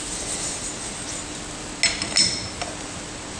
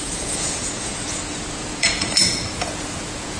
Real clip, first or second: first